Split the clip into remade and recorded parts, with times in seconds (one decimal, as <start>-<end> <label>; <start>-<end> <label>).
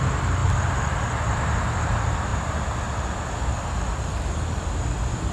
0.0-0.4 recorded; 0.4-1.4 remade; 1.4-5.3 recorded